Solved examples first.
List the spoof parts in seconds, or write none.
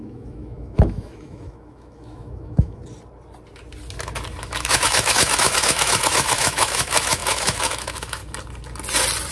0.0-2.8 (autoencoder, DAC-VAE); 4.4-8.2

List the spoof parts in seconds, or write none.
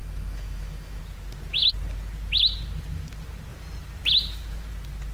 0.0-1.0 (autoencoder, DAC-VAE)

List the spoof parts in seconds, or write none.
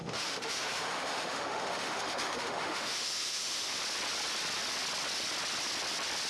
0.0-3.8 (autoencoder, DAC-VAE)